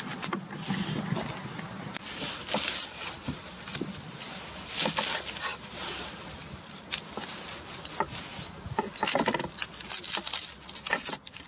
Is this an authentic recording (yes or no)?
yes